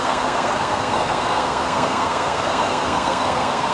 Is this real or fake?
fake